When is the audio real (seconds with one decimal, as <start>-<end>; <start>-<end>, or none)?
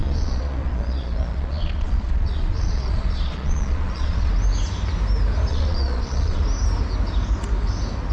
4.3-5.5; 6.4-8.1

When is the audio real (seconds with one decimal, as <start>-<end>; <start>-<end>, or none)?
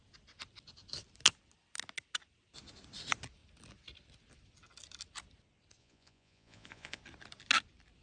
0.0-5.8; 7.0-8.0